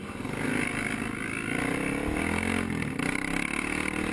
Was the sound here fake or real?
real